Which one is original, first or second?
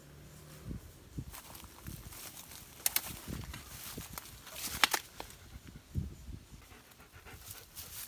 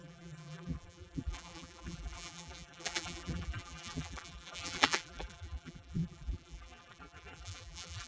first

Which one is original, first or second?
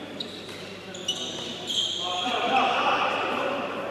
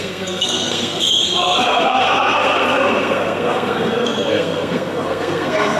first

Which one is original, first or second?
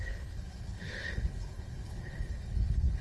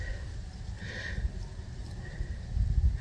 second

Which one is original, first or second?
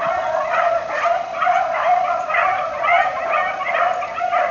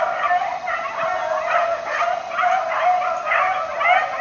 second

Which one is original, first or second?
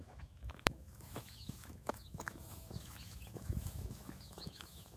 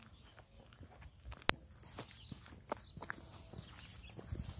second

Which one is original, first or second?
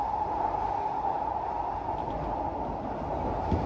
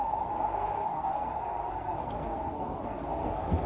first